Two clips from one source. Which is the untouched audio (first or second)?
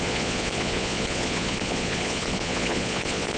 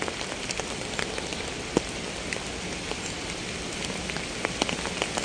second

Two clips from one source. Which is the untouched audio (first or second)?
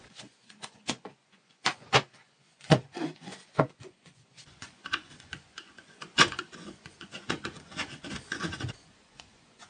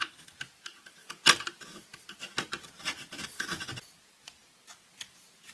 second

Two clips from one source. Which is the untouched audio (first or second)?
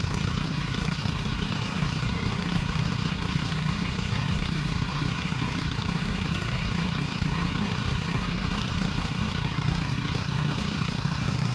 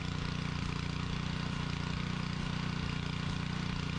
second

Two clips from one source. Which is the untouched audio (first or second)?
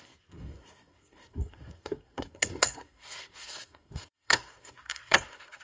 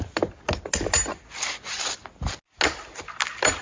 second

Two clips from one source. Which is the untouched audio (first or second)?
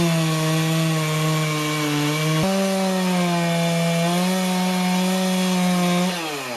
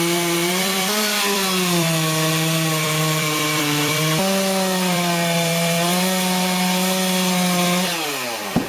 first